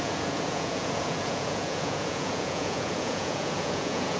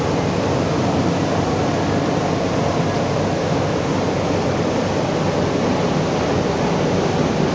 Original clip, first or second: second